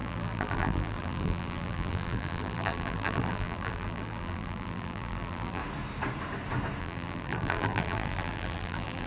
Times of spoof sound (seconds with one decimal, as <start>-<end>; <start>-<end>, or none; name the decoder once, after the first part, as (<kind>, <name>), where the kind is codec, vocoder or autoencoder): 0.0-5.6 (vocoder, BigVGAN v2); 6.8-9.1